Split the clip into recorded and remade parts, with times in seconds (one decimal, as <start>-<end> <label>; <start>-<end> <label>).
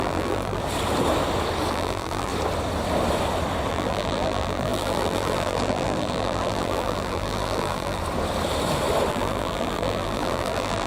0.0-0.6 remade; 0.6-1.7 recorded; 1.7-2.3 remade; 2.3-3.7 recorded; 3.7-8.0 remade; 8.0-9.1 recorded; 9.1-10.9 remade